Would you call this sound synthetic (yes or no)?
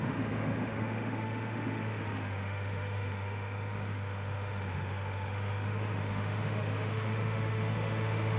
yes